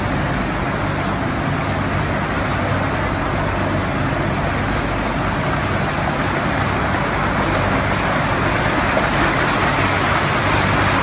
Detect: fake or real real